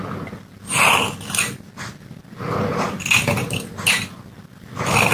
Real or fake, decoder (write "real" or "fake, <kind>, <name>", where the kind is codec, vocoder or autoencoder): real